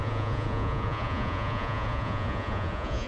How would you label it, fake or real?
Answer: fake